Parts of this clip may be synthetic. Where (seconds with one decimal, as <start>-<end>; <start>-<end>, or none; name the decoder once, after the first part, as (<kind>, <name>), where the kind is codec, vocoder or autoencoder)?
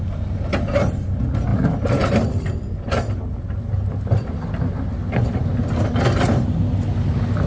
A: 1.5-4.5 (vocoder, BigVGAN v2); 5.0-5.5